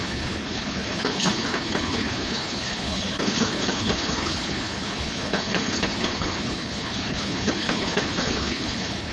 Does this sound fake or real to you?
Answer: fake